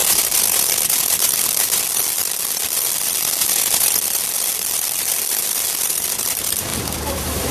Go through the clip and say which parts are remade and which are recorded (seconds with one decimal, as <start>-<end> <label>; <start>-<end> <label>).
0.0-1.8 remade; 1.8-3.4 recorded; 3.4-4.0 remade; 4.0-6.7 recorded; 6.7-7.5 remade